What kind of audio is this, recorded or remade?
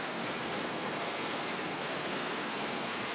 remade